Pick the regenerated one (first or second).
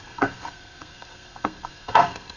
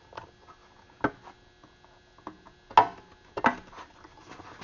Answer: first